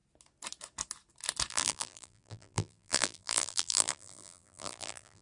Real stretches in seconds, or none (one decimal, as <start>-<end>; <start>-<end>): 0.0-1.5